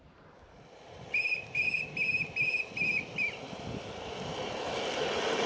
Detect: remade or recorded recorded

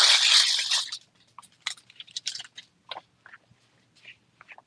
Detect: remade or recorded recorded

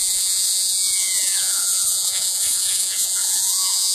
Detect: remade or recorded remade